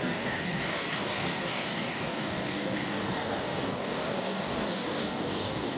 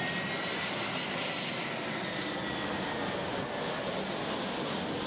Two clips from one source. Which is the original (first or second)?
second